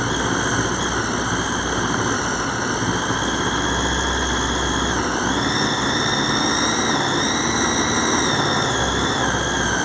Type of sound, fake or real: real